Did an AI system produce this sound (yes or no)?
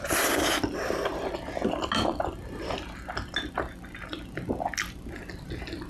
no